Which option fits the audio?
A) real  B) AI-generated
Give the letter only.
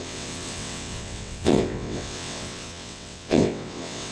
B